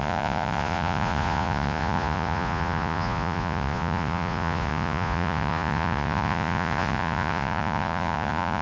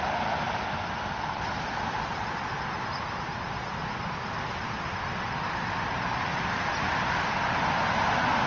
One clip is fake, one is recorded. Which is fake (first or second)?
first